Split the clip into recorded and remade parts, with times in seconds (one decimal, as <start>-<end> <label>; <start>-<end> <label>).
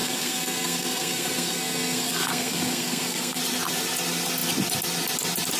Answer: 0.0-3.4 remade; 3.4-5.6 recorded